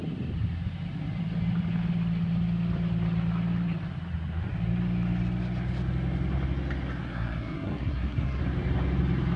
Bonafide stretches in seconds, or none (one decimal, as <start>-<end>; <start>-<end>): 0.0-7.0; 8.4-9.4